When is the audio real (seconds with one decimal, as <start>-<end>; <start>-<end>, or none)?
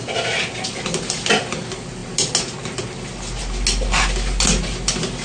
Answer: 0.0-5.2